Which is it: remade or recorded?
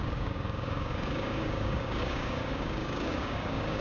remade